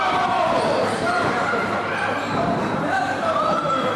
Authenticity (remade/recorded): remade